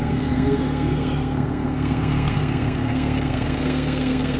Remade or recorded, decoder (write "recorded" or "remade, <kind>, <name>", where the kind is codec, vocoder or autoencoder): remade, codec, SNAC